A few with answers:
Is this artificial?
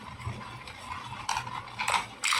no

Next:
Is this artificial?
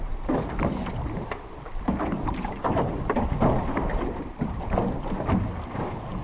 no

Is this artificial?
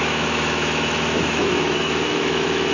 yes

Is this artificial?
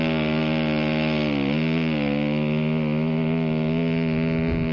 no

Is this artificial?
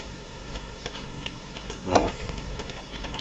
yes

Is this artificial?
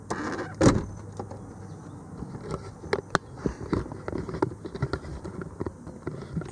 no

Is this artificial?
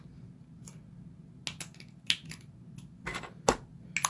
no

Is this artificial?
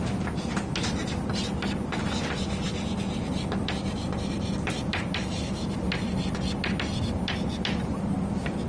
no